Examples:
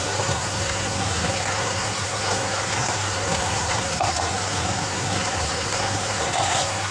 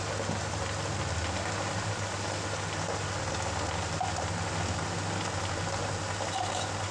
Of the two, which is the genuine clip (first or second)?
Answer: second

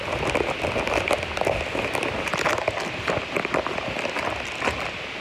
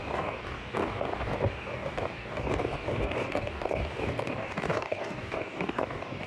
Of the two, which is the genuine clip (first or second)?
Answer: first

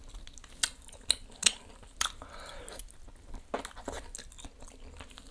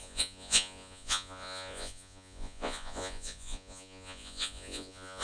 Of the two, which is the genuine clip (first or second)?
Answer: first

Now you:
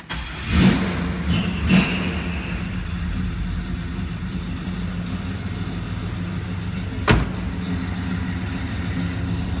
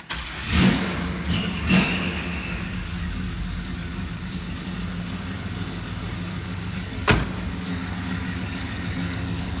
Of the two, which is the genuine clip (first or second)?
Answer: first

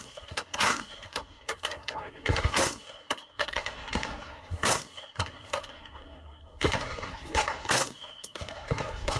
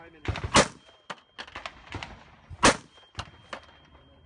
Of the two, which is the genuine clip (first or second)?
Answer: second